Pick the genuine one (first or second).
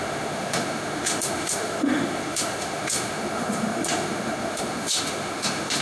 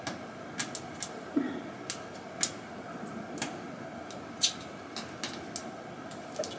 second